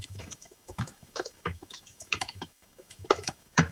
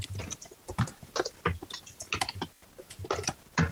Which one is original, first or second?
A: second